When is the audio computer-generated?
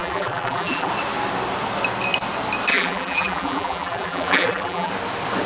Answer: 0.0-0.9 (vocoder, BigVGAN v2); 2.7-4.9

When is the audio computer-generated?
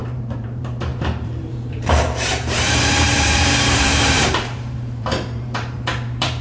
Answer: 0.0-6.4 (vocoder, BigVGAN v2)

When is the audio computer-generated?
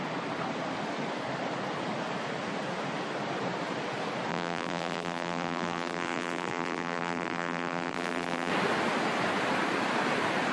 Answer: 4.3-8.5 (vocoder, BigVGAN v2)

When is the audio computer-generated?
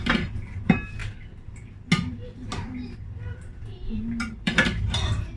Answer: 0.0-1.0 (vocoder, BigVGAN v2); 4.2-5.4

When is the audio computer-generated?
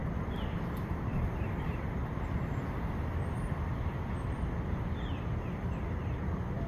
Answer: 0.0-2.9 (vocoder, BigVGAN v2)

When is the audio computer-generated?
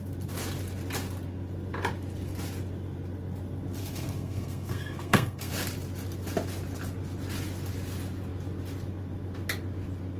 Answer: 3.8-5.5 (codec, SNAC)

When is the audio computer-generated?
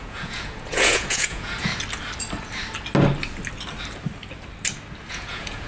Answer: 0.0-1.7 (vocoder, Vocos); 5.1-5.7